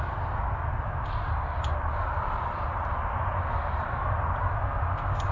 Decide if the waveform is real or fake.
real